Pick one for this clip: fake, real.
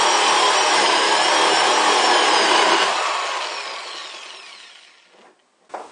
real